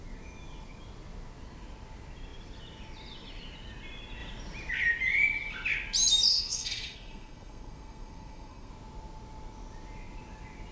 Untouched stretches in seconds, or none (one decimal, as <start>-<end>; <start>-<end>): 0.0-6.3; 8.7-10.7

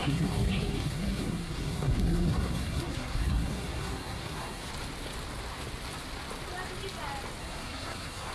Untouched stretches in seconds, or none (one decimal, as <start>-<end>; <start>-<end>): 4.7-7.4

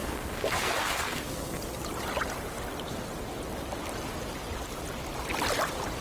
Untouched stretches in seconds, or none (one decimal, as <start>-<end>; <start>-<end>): 1.6-6.0

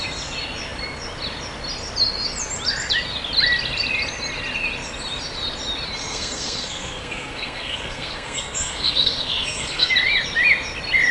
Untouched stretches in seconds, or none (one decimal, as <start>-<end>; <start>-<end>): 0.0-6.0; 9.9-11.1

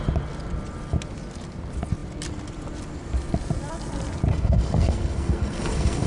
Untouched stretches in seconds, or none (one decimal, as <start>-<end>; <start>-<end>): 0.0-4.3

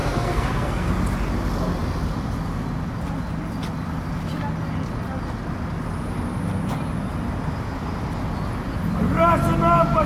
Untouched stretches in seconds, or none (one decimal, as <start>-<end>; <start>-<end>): 0.9-10.1

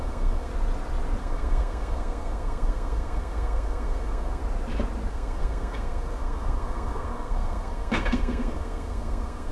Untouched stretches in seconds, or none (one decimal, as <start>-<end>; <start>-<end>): 0.5-1.2; 4.4-5.1